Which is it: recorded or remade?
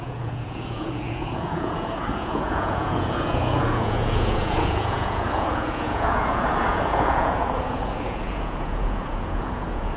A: remade